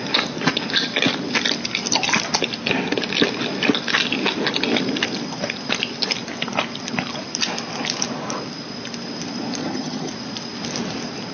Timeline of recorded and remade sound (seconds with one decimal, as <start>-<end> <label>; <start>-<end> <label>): 0.0-9.6 recorded; 9.6-10.1 remade; 10.1-11.3 recorded